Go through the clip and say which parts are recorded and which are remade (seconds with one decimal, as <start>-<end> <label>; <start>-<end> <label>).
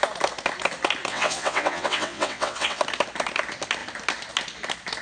0.0-1.1 recorded; 1.1-2.8 remade; 2.8-5.0 recorded